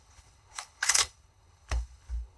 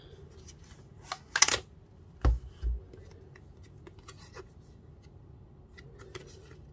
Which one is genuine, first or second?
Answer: second